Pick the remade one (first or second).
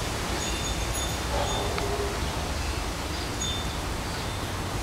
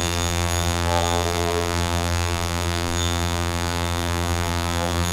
second